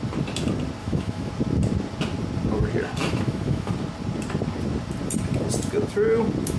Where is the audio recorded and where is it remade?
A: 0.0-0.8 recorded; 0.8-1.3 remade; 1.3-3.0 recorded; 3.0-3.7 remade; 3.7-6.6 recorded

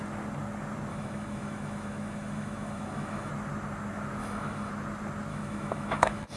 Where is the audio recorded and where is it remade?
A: 0.0-0.9 recorded; 0.9-3.3 remade; 3.3-4.2 recorded; 4.2-4.7 remade; 4.7-5.3 recorded; 5.3-6.4 remade

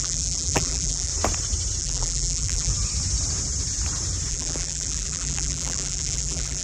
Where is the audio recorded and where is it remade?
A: 0.0-1.1 remade; 1.1-1.8 recorded; 1.8-2.7 remade; 2.7-4.3 recorded; 4.3-6.6 remade

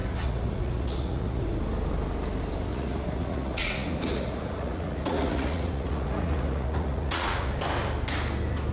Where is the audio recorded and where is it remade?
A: 0.0-1.4 remade; 1.4-2.7 recorded; 2.7-7.5 remade; 7.5-8.7 recorded

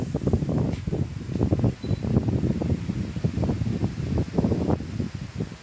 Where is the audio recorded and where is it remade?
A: 0.0-5.6 recorded

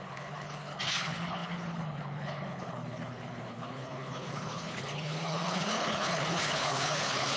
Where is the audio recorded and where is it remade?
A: 0.0-7.4 remade

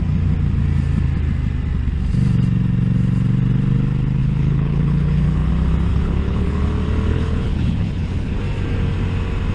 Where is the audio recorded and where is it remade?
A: 0.0-4.2 recorded; 4.2-5.5 remade; 5.5-5.9 recorded; 5.9-6.6 remade; 6.6-7.1 recorded; 7.1-8.4 remade; 8.4-9.5 recorded